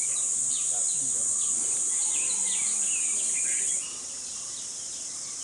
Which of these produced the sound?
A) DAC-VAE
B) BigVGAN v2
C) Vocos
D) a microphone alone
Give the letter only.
D